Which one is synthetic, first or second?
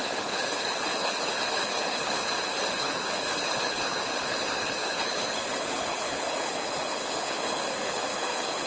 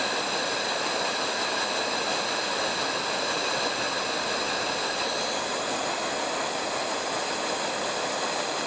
first